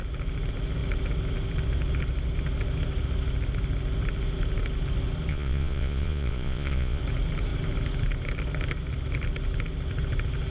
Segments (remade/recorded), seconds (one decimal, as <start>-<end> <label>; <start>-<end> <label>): 0.0-5.3 recorded; 5.3-7.0 remade; 7.0-10.5 recorded